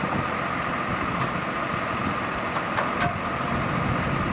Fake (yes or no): no